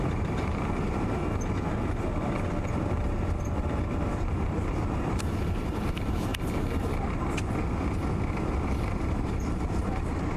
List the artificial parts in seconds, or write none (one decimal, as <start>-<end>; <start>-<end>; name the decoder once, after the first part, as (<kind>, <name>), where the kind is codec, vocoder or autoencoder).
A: 0.0-1.2 (vocoder, BigVGAN v2); 2.7-6.3; 8.3-10.4